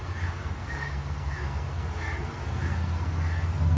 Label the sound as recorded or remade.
remade